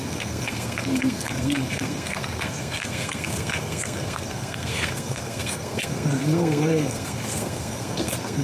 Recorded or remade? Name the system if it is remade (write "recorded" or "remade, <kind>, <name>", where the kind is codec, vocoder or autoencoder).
remade, codec, SNAC